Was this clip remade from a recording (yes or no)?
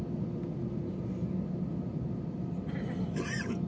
no